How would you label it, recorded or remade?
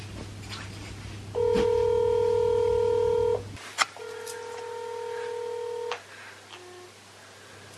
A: recorded